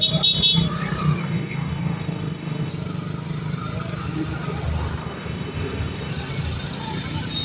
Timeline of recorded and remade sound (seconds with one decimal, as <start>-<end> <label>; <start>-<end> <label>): 0.0-1.2 recorded; 1.2-2.7 remade; 2.7-5.0 recorded; 5.0-6.1 remade; 6.1-7.4 recorded